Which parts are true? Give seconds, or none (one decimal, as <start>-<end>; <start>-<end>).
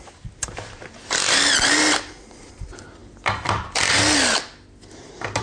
0.0-5.4